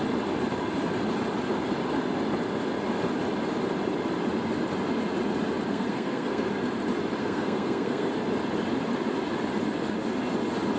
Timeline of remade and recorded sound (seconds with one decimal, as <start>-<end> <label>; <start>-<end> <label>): 0.0-5.7 recorded; 5.7-6.5 remade; 6.5-7.2 recorded; 7.2-8.1 remade; 8.1-10.8 recorded